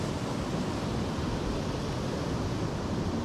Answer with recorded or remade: recorded